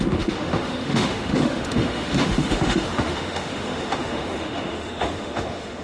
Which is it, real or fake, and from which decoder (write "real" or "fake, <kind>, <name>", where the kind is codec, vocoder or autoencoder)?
fake, autoencoder, DAC-VAE